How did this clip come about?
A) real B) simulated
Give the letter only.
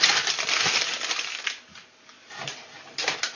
A